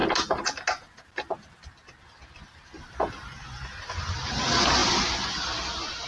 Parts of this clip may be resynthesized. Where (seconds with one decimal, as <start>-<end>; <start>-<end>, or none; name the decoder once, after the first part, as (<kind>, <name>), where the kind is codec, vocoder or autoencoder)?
none